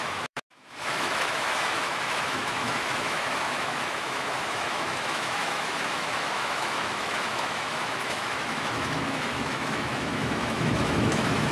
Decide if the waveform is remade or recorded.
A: remade